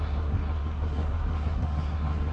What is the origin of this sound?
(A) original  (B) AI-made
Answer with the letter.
B